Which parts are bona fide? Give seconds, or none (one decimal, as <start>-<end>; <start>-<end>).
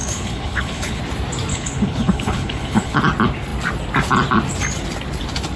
1.0-1.5; 3.0-5.6